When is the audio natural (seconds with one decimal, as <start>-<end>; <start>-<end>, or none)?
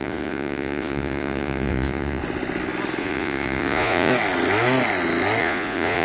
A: 2.2-3.0; 4.1-5.4